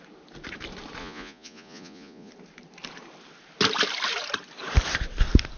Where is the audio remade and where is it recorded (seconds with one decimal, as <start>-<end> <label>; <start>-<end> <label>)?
0.0-1.0 recorded; 1.0-2.3 remade; 2.3-5.6 recorded

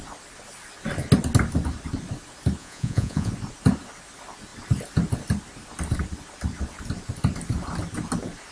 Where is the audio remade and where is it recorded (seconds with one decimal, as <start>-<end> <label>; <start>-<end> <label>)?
0.0-2.6 recorded; 2.6-3.3 remade; 3.3-8.5 recorded

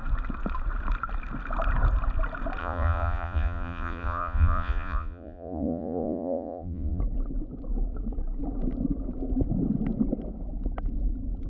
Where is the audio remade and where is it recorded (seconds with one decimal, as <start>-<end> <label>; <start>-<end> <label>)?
0.0-2.6 recorded; 2.6-7.0 remade; 7.0-11.5 recorded

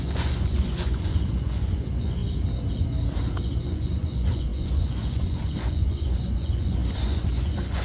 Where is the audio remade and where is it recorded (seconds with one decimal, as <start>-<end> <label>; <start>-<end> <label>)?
0.0-2.2 remade; 2.2-3.6 recorded; 3.6-7.8 remade